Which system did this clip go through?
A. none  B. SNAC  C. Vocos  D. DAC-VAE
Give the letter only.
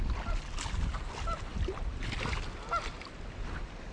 A